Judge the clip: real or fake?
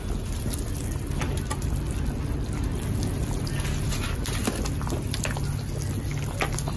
real